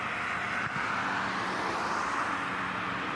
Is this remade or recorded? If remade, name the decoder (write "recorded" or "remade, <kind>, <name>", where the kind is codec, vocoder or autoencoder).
recorded